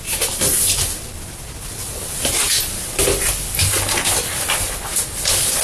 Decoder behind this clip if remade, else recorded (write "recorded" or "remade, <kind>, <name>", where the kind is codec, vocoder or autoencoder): recorded